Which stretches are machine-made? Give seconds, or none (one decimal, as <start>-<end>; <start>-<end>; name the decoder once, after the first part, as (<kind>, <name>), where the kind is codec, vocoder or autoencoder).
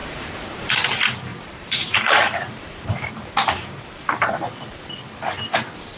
0.0-0.7 (vocoder, BigVGAN v2); 1.3-4.9